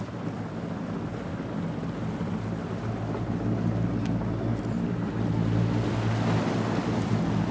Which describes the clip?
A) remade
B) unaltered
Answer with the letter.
B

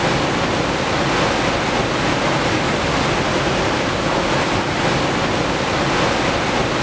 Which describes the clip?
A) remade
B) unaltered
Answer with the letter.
B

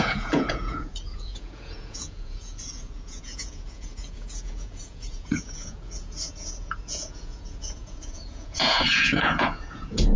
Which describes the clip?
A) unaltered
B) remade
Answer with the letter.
B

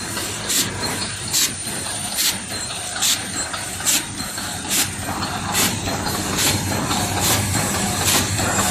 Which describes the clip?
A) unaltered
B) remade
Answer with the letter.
B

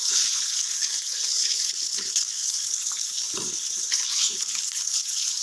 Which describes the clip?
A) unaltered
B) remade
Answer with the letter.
B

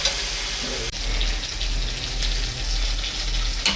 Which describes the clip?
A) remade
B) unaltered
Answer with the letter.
B